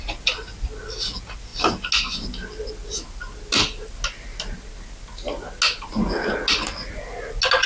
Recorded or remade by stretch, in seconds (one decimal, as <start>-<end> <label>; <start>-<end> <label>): 0.0-7.7 recorded